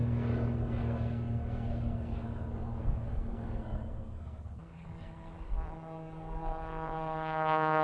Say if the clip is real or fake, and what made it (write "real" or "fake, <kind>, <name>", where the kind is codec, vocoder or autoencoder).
fake, codec, SNAC